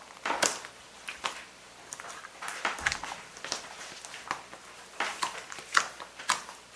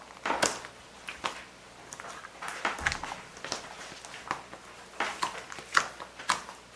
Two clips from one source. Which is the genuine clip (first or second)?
second